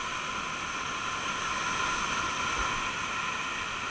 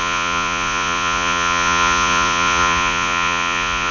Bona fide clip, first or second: first